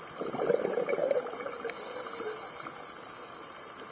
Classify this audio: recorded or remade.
recorded